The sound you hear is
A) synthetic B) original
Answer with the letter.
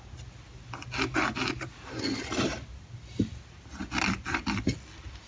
B